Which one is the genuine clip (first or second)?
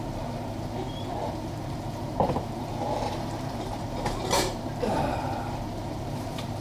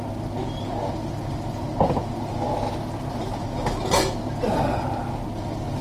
second